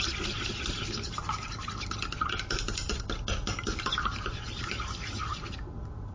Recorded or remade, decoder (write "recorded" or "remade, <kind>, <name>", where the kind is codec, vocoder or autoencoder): recorded